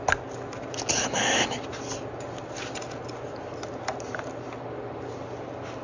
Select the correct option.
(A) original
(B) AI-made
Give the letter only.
A